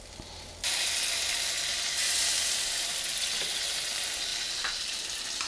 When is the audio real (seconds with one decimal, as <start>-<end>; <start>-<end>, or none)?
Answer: 0.0-5.5